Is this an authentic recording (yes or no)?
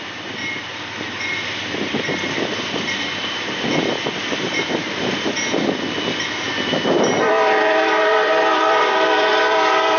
no